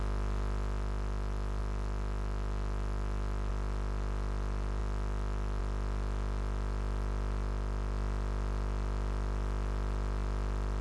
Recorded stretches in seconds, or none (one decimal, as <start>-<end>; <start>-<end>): 0.0-10.8

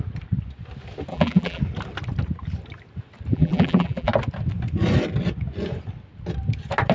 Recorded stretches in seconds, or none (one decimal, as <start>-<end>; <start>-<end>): 0.0-1.1; 1.6-3.3; 4.1-6.9

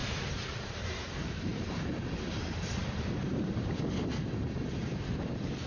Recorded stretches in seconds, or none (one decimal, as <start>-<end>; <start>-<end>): none